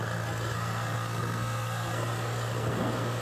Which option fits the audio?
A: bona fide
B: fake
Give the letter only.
B